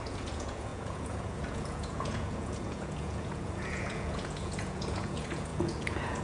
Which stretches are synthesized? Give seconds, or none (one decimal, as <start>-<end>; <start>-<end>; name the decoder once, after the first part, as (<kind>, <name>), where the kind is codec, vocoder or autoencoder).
0.0-6.2 (vocoder, Vocos)